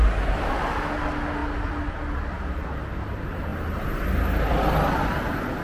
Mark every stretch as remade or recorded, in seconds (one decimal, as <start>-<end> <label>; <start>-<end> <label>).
0.0-3.5 recorded; 3.5-4.1 remade; 4.1-5.6 recorded